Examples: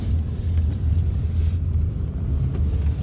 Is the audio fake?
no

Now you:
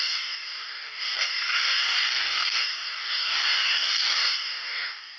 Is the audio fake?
yes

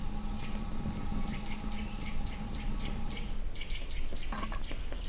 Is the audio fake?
no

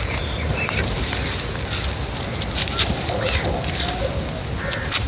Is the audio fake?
no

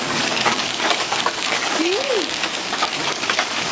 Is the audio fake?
yes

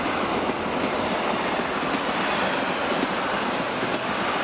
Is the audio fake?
no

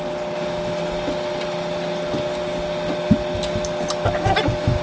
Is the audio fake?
no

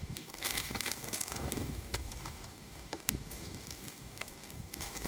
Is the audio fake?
yes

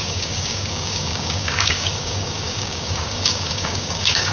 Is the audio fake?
yes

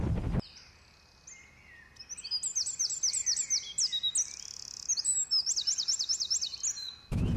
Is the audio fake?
no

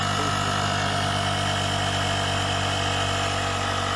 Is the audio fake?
no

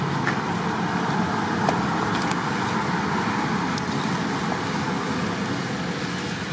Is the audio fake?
no